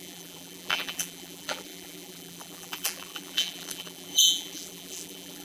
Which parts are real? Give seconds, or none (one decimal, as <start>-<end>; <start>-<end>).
none